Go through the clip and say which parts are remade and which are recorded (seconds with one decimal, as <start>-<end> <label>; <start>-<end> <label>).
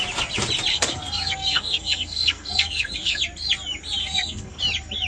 0.0-0.7 recorded; 0.7-3.2 remade; 3.2-4.0 recorded; 4.0-4.6 remade; 4.6-5.1 recorded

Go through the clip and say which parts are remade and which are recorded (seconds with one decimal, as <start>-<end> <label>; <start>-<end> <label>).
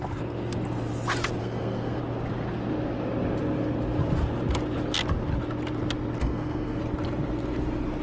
0.0-1.4 recorded; 1.4-2.0 remade; 2.0-6.2 recorded; 6.2-6.8 remade; 6.8-8.0 recorded